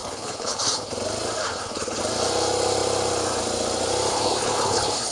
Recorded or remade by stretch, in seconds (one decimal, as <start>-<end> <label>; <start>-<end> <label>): 0.0-0.9 remade; 0.9-1.4 recorded; 1.4-2.0 remade; 2.0-4.1 recorded; 4.1-5.1 remade